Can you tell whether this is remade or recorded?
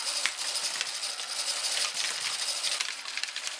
recorded